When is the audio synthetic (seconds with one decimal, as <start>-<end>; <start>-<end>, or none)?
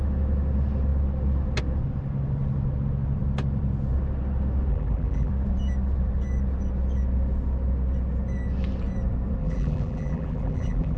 4.7-5.3; 9.4-11.0